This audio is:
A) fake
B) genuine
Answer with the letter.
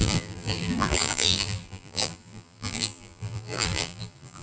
A